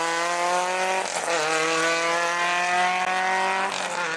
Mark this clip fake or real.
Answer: real